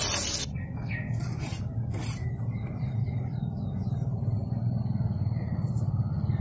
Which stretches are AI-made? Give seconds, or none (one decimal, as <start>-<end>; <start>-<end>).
none